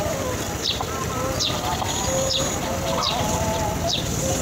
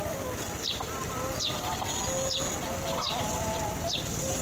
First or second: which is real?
second